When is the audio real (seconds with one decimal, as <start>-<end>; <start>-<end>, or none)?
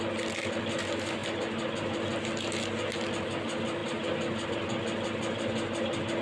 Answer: 0.0-6.2